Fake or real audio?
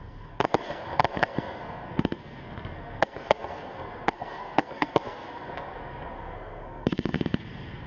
fake